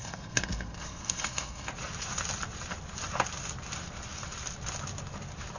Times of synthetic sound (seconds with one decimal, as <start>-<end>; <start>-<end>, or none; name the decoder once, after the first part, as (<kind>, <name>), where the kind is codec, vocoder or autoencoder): 0.0-1.7 (codec, SNAC)